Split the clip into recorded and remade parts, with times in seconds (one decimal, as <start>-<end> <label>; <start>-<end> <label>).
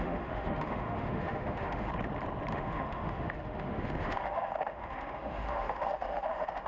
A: 0.0-1.9 remade; 1.9-2.5 recorded; 2.5-6.7 remade